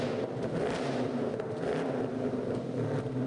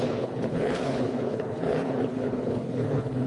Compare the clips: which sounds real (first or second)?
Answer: first